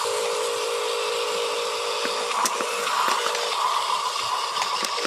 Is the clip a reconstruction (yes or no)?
no